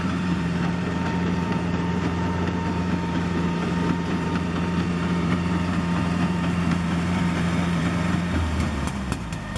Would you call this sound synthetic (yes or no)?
yes